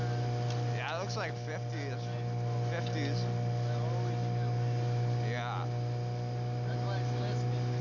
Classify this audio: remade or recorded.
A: recorded